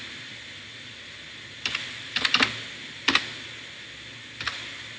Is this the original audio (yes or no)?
yes